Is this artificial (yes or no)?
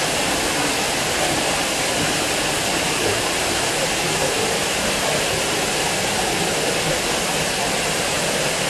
no